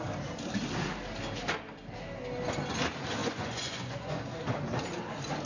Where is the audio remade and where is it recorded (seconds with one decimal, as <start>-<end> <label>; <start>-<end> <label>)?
0.0-3.2 recorded; 3.2-4.2 remade; 4.2-5.5 recorded